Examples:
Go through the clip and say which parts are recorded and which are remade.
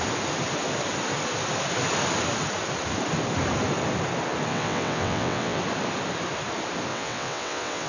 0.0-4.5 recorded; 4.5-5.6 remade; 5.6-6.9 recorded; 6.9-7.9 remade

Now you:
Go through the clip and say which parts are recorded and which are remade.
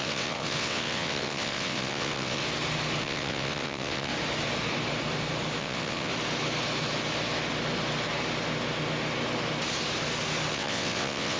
0.0-2.4 remade; 2.4-3.0 recorded; 3.0-4.1 remade; 4.1-5.6 recorded; 5.6-6.1 remade; 6.1-10.5 recorded; 10.5-11.4 remade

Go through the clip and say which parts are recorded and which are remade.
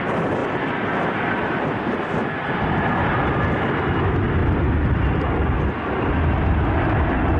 0.0-7.4 recorded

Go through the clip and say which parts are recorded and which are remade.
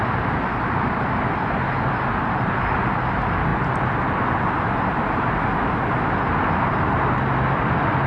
0.0-8.1 recorded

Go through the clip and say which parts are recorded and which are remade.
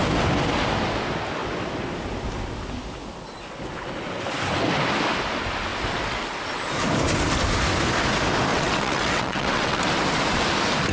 0.0-8.5 recorded; 8.5-9.8 remade; 9.8-10.9 recorded